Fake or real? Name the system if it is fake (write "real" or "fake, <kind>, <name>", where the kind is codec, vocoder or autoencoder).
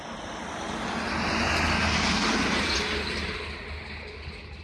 real